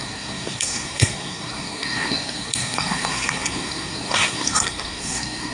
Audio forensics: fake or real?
fake